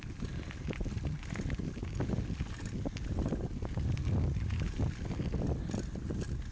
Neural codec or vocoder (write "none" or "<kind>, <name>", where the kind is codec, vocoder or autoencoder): none